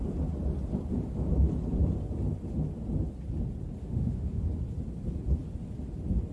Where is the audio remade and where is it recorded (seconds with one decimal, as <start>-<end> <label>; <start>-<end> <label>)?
0.0-3.8 recorded; 3.8-4.4 remade; 4.4-6.3 recorded